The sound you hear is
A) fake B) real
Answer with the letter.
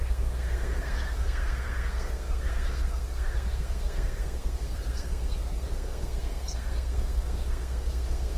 A